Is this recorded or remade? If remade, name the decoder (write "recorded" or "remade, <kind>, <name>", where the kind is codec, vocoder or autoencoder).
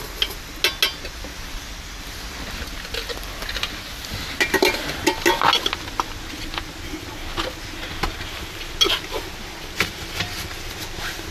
recorded